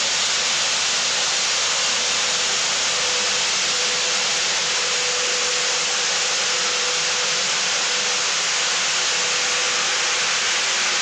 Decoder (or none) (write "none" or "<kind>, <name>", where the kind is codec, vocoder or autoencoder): none